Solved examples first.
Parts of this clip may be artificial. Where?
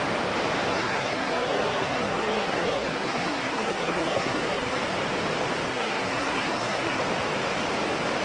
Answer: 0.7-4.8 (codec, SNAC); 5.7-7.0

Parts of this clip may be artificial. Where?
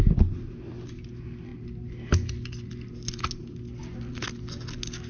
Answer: none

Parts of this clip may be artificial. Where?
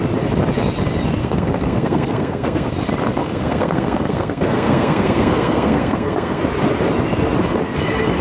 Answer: 1.2-2.7 (codec, SNAC); 3.2-6.4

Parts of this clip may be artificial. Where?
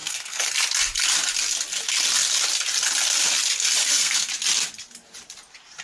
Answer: 0.0-0.5 (codec, SNAC); 3.8-4.3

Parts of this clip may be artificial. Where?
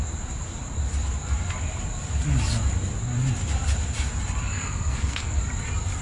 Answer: 4.5-5.4 (codec, SNAC)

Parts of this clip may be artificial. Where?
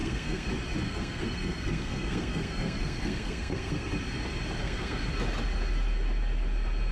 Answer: 0.0-0.5 (codec, SNAC); 0.9-3.9; 4.6-5.1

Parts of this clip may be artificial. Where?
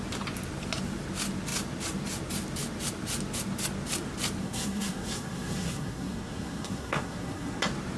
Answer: 4.4-7.6 (codec, SNAC)